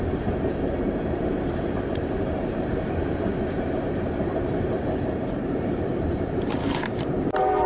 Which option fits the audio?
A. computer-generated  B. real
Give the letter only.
A